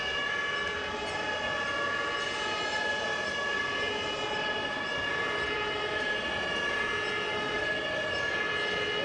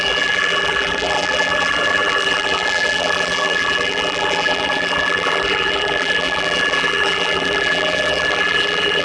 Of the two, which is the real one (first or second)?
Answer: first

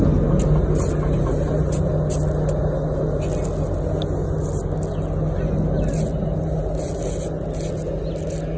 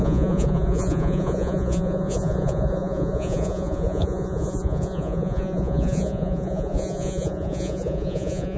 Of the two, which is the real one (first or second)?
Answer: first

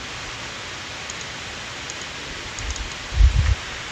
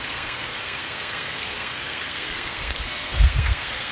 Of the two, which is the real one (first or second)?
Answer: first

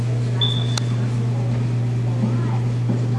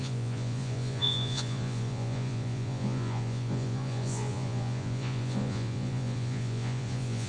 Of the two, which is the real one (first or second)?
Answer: first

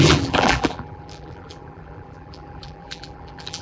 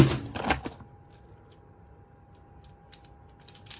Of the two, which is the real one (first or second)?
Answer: second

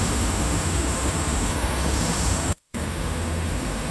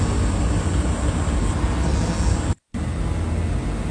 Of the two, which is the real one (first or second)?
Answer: second